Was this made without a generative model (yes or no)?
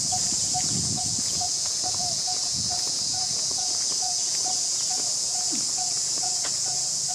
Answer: no